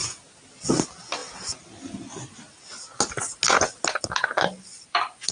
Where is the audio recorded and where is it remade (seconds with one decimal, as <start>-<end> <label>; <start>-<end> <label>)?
0.0-5.3 recorded